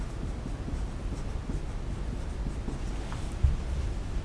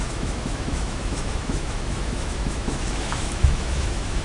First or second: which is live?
first